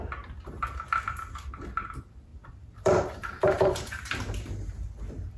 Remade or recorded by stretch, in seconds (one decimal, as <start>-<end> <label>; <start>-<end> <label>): 0.0-2.3 recorded; 2.3-4.9 remade; 4.9-5.4 recorded